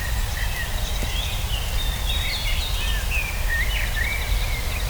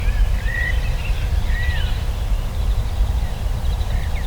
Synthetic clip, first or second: second